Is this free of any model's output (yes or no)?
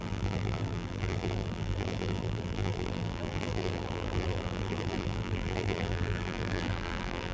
no